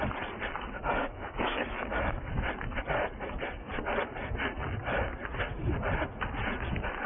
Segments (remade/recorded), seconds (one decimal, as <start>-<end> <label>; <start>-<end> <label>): 0.0-1.0 recorded; 1.0-2.3 remade; 2.3-7.1 recorded